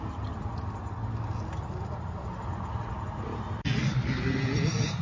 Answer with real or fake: real